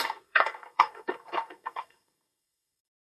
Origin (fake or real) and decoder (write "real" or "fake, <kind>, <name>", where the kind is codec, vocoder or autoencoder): fake, codec, SNAC